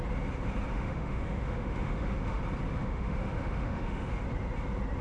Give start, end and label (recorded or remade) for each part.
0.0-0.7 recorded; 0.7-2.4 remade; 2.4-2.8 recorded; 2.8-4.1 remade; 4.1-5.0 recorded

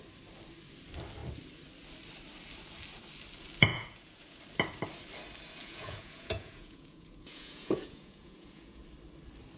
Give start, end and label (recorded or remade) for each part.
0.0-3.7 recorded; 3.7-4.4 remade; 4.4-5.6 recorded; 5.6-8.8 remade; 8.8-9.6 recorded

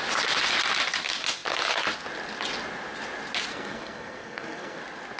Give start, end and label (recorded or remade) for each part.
0.0-3.5 recorded; 3.5-4.8 remade; 4.8-5.2 recorded

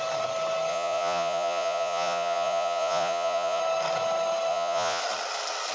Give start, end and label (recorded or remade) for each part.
0.0-0.7 recorded; 0.7-3.6 remade; 3.6-4.5 recorded; 4.5-5.0 remade; 5.0-5.7 recorded

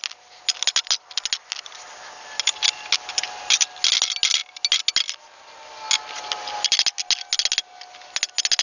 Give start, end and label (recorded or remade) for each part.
0.0-8.6 recorded

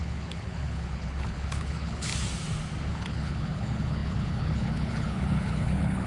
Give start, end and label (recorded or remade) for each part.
0.0-2.1 remade; 2.1-2.9 recorded; 2.9-6.1 remade

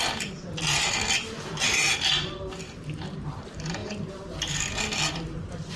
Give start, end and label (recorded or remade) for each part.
0.0-5.8 recorded